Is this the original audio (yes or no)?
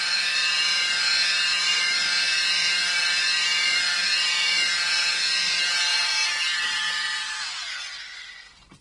no